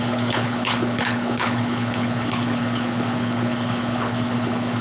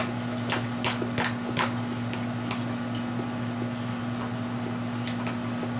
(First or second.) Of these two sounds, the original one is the second